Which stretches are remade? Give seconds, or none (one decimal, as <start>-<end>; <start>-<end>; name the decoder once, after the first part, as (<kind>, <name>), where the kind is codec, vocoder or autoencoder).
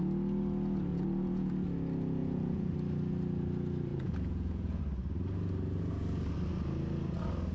0.9-1.5 (vocoder, Vocos); 2.2-2.7; 3.9-4.8